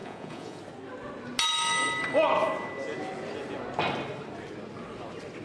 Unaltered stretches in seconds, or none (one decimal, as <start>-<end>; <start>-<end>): 0.6-5.4

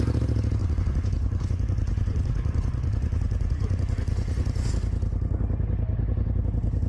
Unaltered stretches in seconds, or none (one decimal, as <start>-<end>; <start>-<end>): 0.0-0.6; 4.7-6.9